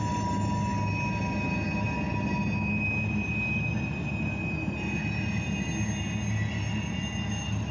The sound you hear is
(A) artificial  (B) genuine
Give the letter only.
B